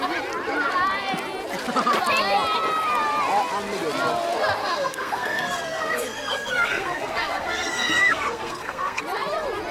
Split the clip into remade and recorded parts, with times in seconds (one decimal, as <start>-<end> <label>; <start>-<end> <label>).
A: 0.0-4.6 recorded; 4.6-9.0 remade; 9.0-9.7 recorded